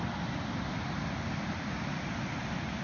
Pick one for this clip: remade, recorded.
recorded